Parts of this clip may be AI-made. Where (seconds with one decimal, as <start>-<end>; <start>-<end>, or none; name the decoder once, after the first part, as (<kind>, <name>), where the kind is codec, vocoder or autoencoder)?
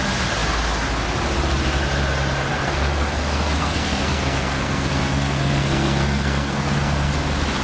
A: 2.5-7.1 (codec, SNAC)